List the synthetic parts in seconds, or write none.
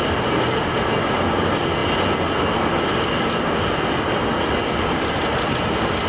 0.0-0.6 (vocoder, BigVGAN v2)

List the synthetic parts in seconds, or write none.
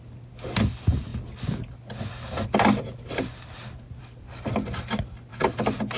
none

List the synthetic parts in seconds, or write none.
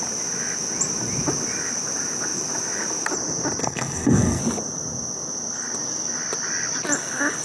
3.6-4.4 (codec, SNAC)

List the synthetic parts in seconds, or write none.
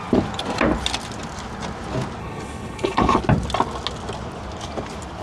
2.2-3.2 (codec, HILCodec)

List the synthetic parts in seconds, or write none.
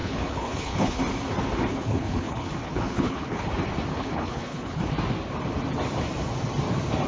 0.0-1.0 (codec, HILCodec); 1.7-3.5; 3.9-4.9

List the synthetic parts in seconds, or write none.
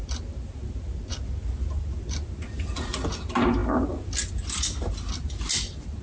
none